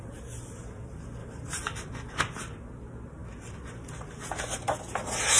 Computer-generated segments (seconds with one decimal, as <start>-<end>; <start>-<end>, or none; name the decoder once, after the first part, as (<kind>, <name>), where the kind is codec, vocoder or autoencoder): 1.2-2.2 (vocoder, BigVGAN v2)